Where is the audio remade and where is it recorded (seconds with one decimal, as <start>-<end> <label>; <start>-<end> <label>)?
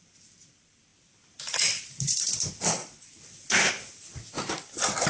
0.0-5.1 recorded